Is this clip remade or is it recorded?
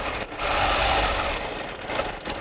recorded